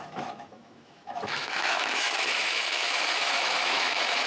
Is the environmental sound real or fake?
fake